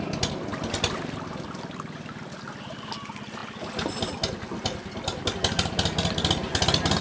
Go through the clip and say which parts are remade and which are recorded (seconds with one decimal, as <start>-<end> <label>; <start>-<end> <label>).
0.0-7.0 recorded